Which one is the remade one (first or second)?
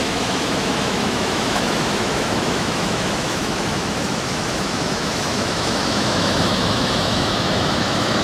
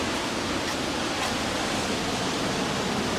first